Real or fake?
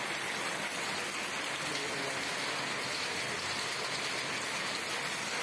real